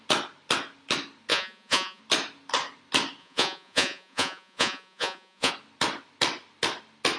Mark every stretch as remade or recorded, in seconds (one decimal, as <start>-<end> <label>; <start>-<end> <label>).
0.0-1.3 recorded; 1.3-2.0 remade; 2.0-3.2 recorded; 3.2-5.5 remade; 5.5-7.2 recorded